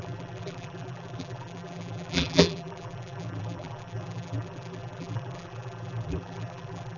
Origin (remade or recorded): remade